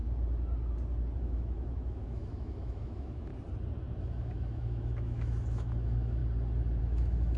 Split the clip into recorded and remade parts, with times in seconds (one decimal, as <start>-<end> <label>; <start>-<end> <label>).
0.0-1.2 recorded; 1.2-3.3 remade; 3.3-4.0 recorded; 4.0-6.2 remade; 6.2-6.8 recorded; 6.8-7.4 remade